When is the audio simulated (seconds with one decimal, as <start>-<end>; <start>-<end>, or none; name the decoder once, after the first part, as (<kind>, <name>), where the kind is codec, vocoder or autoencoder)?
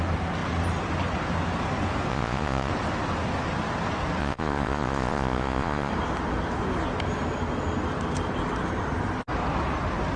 2.1-2.7 (vocoder, Vocos); 4.2-5.9